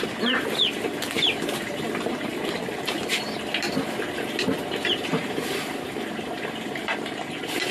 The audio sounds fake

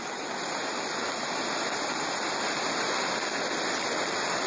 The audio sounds real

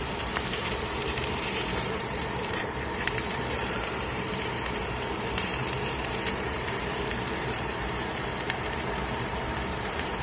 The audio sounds fake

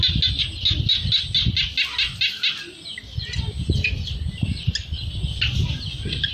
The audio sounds real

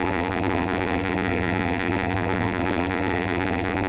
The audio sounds fake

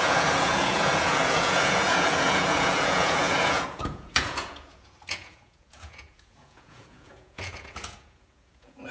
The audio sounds fake